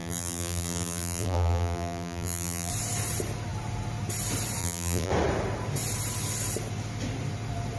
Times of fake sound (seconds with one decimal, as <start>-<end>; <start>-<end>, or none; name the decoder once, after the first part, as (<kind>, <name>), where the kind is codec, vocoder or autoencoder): 0.0-2.7 (vocoder, BigVGAN v2); 4.6-5.1